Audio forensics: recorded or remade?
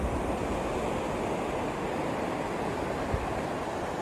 recorded